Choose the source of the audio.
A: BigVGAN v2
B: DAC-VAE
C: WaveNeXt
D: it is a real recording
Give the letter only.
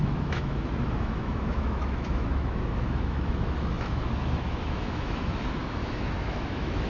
B